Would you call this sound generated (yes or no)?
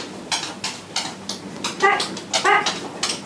no